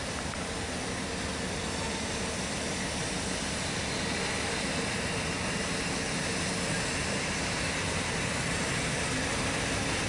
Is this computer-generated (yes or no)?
no